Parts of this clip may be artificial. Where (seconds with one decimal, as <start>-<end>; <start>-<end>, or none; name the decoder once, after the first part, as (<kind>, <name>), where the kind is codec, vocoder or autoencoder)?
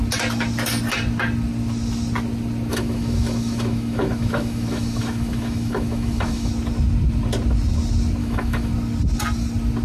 2.7-6.5 (autoencoder, DAC-VAE); 8.2-8.7